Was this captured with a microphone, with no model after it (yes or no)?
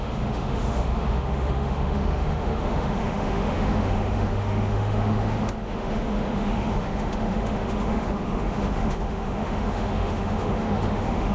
no